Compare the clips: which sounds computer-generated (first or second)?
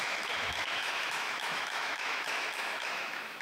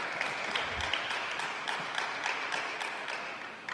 first